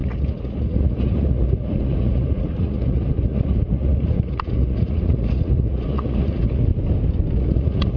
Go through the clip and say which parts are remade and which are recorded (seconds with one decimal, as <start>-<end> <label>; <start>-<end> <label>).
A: 0.0-6.7 remade; 6.7-7.4 recorded; 7.4-8.0 remade